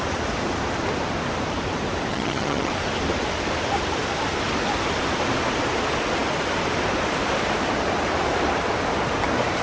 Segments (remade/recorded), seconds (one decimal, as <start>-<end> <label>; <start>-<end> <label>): 0.0-2.1 recorded; 2.1-2.7 remade; 2.7-9.6 recorded